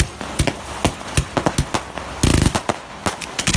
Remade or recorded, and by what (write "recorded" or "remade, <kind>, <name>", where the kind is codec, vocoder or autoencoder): recorded